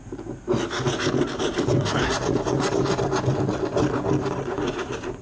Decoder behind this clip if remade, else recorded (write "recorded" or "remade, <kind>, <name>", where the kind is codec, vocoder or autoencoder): recorded